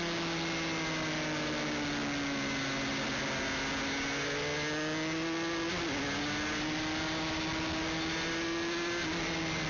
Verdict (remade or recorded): recorded